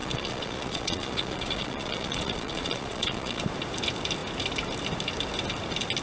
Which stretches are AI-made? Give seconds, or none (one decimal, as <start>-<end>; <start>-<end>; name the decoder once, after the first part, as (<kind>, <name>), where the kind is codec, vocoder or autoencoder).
0.0-3.4 (vocoder, Vocos)